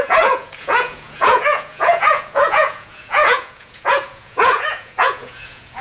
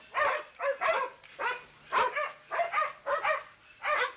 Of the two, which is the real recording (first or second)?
second